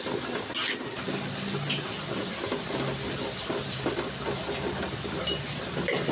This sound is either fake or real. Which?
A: real